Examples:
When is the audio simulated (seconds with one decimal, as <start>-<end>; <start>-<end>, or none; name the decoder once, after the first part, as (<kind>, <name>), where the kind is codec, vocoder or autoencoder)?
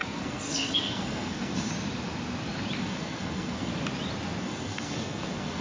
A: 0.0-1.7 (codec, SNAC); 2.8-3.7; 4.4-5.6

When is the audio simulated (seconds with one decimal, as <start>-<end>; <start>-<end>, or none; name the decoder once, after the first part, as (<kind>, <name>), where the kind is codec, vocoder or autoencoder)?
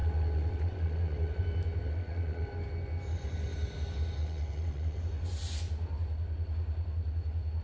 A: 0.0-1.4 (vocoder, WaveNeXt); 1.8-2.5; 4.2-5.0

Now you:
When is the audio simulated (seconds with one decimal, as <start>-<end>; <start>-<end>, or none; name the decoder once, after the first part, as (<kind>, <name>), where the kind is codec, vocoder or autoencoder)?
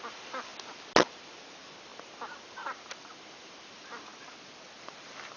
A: 0.0-0.5 (vocoder, BigVGAN v2); 1.1-4.1; 4.7-5.4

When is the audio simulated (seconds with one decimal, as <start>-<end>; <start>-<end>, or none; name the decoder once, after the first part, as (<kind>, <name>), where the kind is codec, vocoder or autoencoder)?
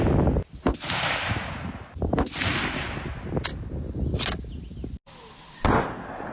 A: none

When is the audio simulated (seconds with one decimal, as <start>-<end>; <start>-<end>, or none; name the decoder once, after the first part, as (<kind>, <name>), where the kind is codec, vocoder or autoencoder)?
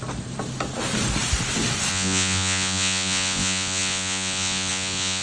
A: 1.9-5.2 (vocoder, Vocos)